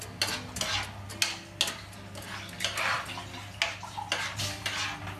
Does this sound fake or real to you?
real